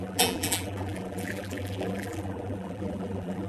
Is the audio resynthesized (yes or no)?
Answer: yes